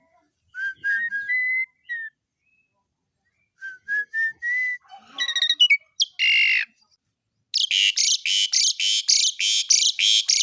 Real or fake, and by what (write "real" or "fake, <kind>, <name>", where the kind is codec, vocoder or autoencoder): real